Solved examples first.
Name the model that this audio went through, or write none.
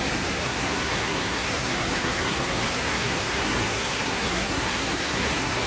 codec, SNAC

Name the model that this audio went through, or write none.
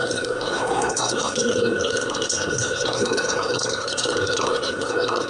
codec, SNAC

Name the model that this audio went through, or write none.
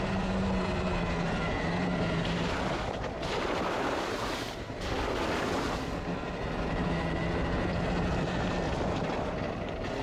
none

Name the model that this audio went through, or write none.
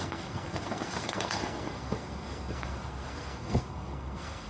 codec, SNAC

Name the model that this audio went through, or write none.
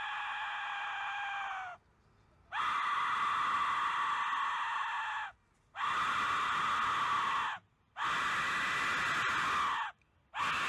none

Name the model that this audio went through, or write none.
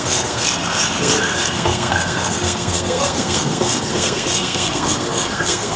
codec, SNAC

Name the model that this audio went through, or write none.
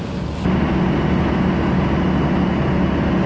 none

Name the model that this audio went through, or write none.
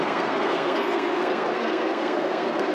codec, SNAC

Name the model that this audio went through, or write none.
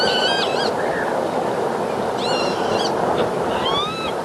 none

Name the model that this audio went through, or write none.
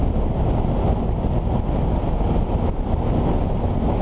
none